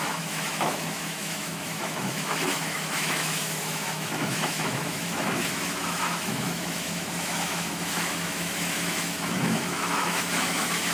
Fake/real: fake